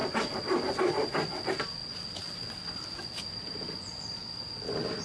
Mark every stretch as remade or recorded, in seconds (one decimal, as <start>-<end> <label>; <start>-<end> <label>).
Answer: 0.0-5.0 recorded